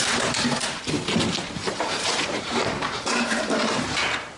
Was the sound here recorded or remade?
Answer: remade